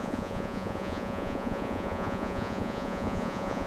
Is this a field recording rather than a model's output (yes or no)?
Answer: no